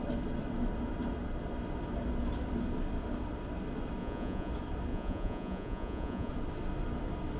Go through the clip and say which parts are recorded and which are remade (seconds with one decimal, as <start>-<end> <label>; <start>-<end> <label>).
0.0-4.0 recorded; 4.0-4.5 remade; 4.5-4.9 recorded; 4.9-6.3 remade; 6.3-7.4 recorded